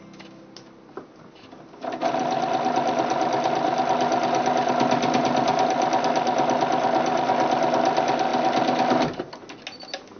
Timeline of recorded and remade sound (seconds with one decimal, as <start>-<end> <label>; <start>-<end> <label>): 0.0-10.2 recorded